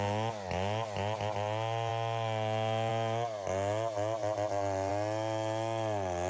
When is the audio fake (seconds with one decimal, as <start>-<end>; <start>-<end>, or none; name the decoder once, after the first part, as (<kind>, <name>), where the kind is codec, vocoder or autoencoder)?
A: none